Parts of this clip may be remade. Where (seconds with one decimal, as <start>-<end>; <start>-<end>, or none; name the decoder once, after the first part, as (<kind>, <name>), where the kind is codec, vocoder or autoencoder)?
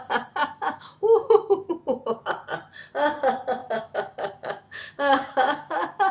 0.4-1.7 (autoencoder, DAC-VAE); 3.6-6.1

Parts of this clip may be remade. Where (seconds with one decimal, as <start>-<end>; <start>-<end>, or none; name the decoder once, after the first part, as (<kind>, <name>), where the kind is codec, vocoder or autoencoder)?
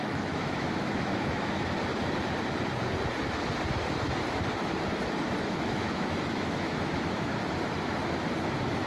0.0-1.9 (autoencoder, DAC-VAE); 5.4-7.3